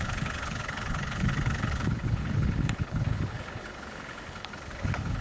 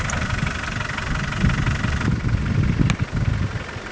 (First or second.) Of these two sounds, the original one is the second